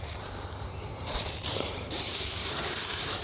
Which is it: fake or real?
fake